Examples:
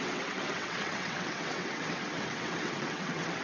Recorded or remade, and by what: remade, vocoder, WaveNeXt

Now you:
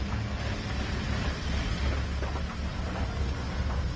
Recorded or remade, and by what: recorded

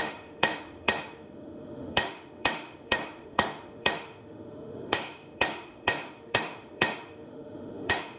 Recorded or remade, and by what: remade, autoencoder, DAC-VAE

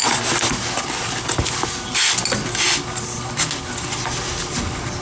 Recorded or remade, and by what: recorded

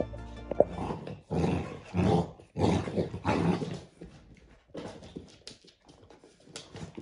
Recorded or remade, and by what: recorded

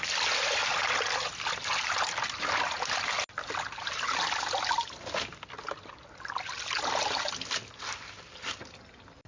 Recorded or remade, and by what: recorded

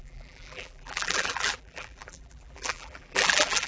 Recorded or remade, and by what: remade, vocoder, BigVGAN v2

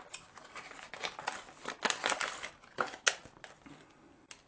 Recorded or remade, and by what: recorded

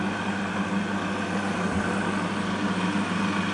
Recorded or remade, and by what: recorded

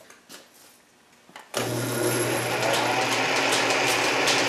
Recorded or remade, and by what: recorded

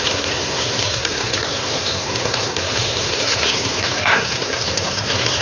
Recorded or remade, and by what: remade, codec, SNAC